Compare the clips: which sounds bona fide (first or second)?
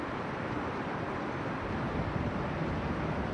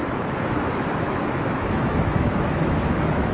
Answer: first